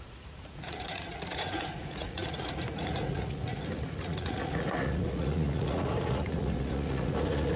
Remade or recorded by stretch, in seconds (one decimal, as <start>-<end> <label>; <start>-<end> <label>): 0.0-7.6 remade